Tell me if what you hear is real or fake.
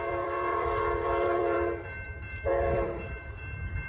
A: fake